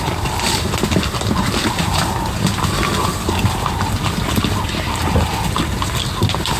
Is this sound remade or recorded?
recorded